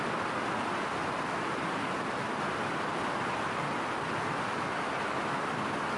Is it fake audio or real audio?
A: real